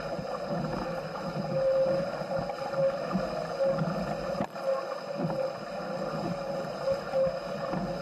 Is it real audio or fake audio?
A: real